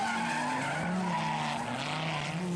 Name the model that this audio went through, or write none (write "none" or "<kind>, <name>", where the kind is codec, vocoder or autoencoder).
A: none